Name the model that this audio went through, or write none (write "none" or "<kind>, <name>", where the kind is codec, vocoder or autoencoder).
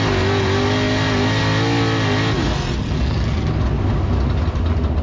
none